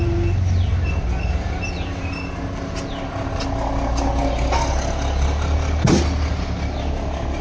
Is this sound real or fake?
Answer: real